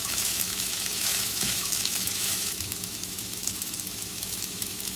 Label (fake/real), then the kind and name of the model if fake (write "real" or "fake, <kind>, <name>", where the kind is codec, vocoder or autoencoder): fake, autoencoder, DAC-VAE